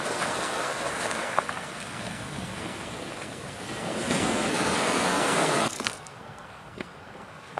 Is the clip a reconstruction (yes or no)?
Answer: yes